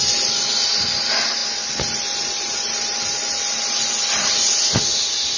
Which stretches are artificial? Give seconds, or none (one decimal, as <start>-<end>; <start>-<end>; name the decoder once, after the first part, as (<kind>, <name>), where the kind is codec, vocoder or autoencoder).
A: none